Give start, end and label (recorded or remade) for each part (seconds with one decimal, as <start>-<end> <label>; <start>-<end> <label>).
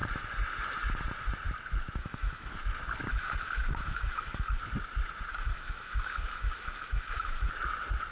0.0-2.0 recorded; 2.0-2.5 remade; 2.5-3.1 recorded; 3.1-4.6 remade; 4.6-5.3 recorded; 5.3-7.5 remade; 7.5-8.1 recorded